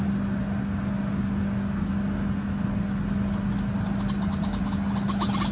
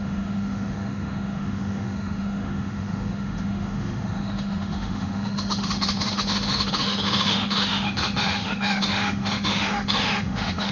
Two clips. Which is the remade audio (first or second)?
second